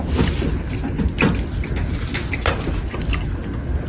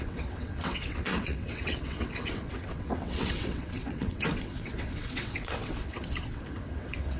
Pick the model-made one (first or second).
second